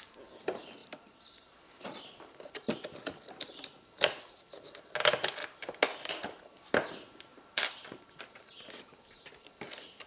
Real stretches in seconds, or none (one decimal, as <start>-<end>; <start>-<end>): 0.0-0.8; 1.7-7.3; 8.1-10.1